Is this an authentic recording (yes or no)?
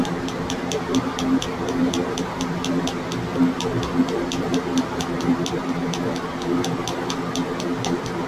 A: yes